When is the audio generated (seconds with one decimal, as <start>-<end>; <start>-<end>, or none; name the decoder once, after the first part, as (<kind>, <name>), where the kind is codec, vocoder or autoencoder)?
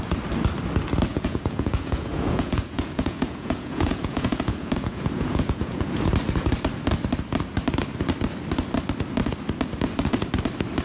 1.1-6.0 (vocoder, Vocos)